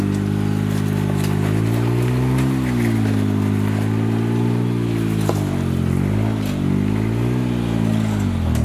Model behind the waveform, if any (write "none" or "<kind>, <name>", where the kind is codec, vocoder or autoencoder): none